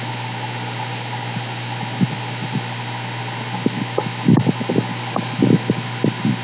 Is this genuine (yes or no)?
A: yes